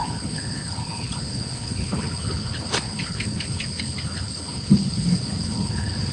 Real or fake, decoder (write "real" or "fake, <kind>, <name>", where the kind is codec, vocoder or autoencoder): fake, codec, HILCodec